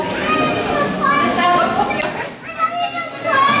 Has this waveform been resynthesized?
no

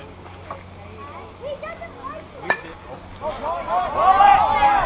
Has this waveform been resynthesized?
no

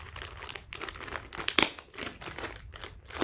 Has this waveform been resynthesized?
no